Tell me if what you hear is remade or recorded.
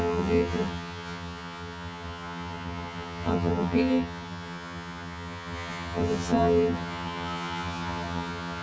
remade